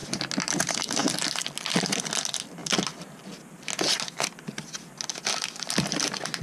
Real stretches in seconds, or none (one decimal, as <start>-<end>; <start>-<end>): 0.0-6.4